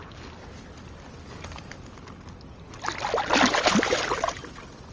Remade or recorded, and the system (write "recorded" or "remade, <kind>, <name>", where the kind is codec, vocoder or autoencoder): recorded